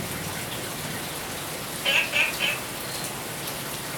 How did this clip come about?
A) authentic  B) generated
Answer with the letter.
A